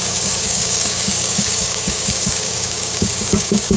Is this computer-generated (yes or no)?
yes